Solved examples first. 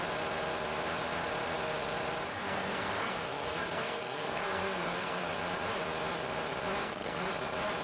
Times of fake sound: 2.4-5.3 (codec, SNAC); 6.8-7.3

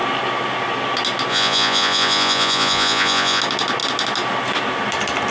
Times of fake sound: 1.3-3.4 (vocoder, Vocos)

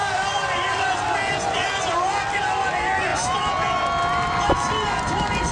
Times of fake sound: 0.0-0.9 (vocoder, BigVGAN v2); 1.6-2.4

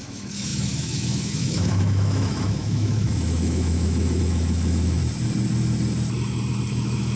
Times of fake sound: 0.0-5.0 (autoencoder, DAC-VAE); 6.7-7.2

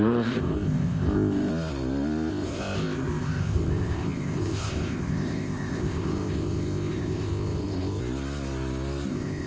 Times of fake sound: 0.0-1.5 (codec, ZipCodec); 2.3-8.0; 9.1-9.5

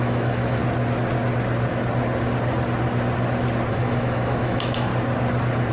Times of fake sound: 0.0-0.6 (autoencoder, DAC-VAE); 3.7-4.9

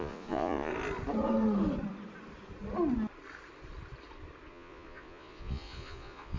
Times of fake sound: 0.0-0.7 (vocoder, Vocos); 4.5-6.4